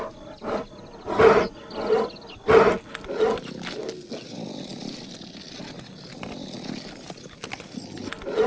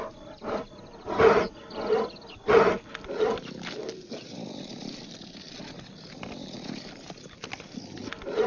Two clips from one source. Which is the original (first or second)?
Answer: first